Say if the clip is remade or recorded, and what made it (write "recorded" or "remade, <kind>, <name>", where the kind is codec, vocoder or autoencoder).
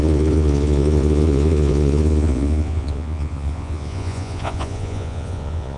remade, vocoder, Vocos